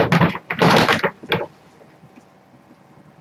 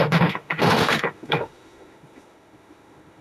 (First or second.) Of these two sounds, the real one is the first